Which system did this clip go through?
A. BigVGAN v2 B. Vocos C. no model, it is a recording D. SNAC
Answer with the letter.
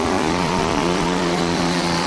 B